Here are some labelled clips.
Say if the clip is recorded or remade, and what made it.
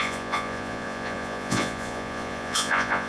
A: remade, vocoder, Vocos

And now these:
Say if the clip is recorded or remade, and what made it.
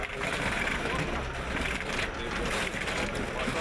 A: recorded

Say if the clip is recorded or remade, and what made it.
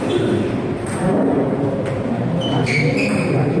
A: recorded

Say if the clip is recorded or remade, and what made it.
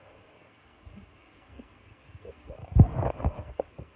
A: remade, codec, SNAC